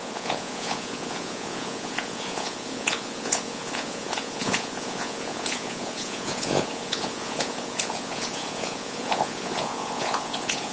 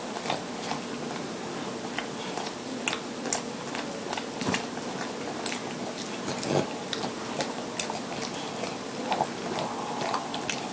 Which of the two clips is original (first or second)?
second